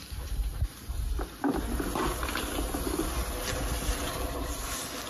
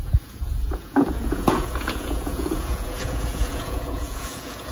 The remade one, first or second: second